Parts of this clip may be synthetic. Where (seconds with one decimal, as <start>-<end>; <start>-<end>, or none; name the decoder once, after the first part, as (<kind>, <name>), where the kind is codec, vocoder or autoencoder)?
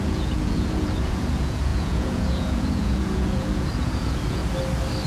0.0-4.4 (vocoder, Vocos)